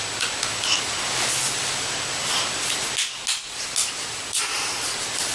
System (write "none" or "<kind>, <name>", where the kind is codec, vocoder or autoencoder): none